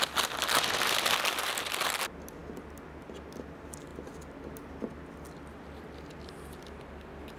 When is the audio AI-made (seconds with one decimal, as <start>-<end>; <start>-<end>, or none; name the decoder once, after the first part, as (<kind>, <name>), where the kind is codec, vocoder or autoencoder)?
none